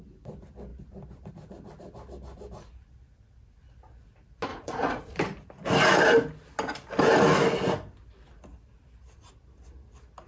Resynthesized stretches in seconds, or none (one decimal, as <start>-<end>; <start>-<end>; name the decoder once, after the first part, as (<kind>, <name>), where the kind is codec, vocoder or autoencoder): 4.5-5.2 (vocoder, Vocos)